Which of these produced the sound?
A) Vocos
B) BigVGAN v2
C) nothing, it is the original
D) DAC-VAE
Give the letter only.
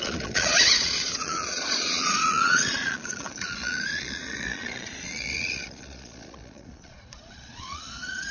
A